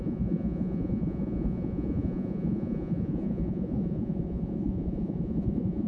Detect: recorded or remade remade